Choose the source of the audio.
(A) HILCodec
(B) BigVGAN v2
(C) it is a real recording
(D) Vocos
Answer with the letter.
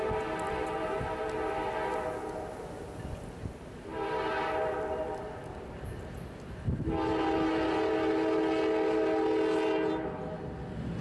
C